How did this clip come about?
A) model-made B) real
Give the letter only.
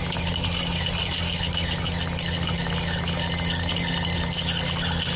B